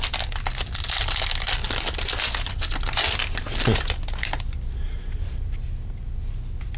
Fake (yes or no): no